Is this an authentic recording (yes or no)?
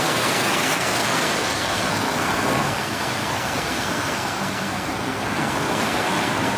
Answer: no